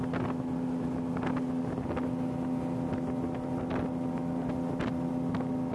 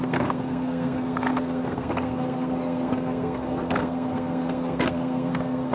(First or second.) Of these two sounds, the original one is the first